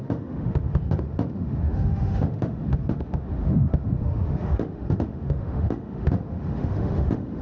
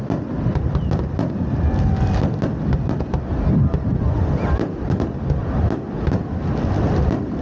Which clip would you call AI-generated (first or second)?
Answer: first